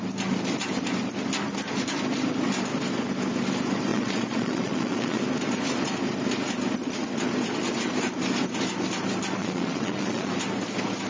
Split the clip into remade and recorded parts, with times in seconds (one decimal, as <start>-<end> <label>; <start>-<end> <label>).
0.0-3.9 recorded; 3.9-5.2 remade; 5.2-9.4 recorded; 9.4-10.3 remade; 10.3-11.1 recorded